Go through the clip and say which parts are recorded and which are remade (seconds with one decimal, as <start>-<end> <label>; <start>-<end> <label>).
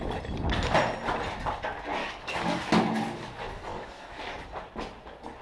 0.0-2.0 recorded; 2.0-2.7 remade; 2.7-3.7 recorded; 3.7-4.2 remade; 4.2-5.4 recorded